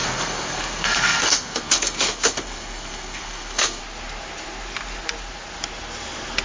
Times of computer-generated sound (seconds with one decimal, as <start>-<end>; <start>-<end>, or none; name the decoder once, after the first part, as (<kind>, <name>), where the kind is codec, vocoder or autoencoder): 0.0-3.8 (codec, SNAC)